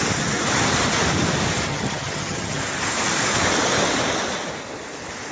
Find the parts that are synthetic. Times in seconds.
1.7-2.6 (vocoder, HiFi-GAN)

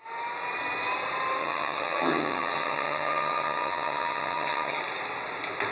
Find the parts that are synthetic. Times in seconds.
1.4-4.8 (vocoder, HiFi-GAN)